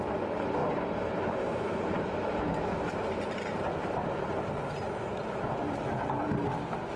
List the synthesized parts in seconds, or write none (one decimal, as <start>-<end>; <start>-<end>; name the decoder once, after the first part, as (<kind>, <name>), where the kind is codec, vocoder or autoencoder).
0.6-4.1 (vocoder, BigVGAN v2); 5.1-6.4